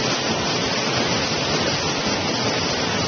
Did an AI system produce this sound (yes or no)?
no